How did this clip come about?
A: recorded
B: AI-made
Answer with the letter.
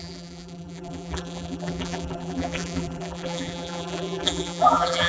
B